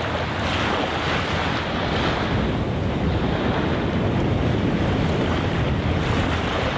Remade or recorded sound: recorded